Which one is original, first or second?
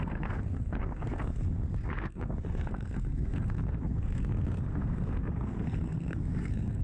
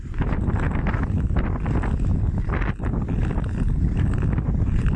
second